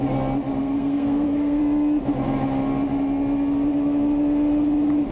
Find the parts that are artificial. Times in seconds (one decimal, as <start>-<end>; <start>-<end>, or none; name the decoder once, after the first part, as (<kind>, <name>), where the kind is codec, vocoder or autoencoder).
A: 0.6-1.6 (codec, SNAC)

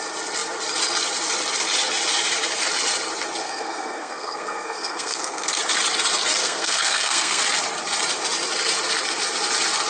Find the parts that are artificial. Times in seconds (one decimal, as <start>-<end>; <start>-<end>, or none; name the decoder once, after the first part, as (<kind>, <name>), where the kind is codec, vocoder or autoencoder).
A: 3.4-5.6 (codec, SNAC); 6.4-7.4

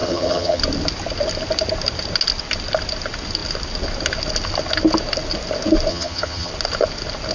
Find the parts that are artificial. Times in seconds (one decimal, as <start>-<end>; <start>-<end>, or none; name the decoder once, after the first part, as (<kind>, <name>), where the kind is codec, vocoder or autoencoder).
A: 0.0-0.6 (vocoder, HiFi-GAN); 5.9-6.5

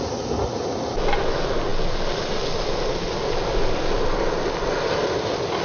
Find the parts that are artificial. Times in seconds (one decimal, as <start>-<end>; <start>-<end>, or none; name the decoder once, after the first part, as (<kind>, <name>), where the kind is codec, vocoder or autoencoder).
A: none

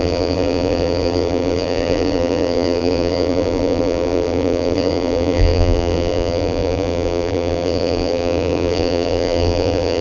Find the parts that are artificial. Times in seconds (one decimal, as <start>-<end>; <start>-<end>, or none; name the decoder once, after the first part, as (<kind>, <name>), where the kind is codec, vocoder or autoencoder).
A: 0.0-10.0 (vocoder, BigVGAN v2)

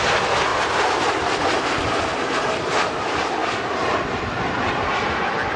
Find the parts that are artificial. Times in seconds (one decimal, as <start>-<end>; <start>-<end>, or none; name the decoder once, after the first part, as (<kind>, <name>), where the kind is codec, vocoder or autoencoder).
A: 0.5-1.4 (vocoder, BigVGAN v2)

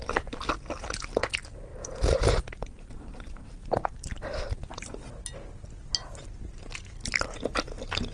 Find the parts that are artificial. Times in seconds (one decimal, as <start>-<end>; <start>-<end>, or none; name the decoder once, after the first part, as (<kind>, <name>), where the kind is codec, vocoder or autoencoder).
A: 0.0-0.5 (vocoder, BigVGAN v2); 1.7-5.1

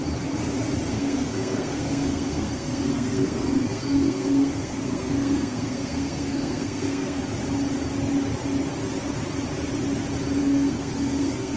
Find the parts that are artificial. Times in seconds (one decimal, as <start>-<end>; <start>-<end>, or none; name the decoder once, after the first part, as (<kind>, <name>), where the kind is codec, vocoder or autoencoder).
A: 0.9-7.2 (codec, SNAC); 10.4-11.6